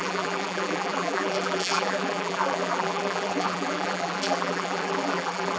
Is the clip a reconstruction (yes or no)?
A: yes